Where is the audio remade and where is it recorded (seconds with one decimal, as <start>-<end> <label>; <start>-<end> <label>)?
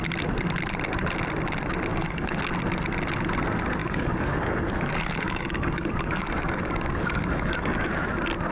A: 0.0-1.9 recorded; 1.9-2.4 remade; 2.4-3.8 recorded; 3.8-7.9 remade; 7.9-8.5 recorded